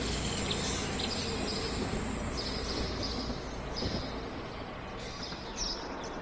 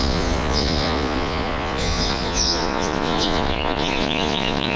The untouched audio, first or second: first